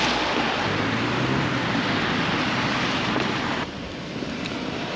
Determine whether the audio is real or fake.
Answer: real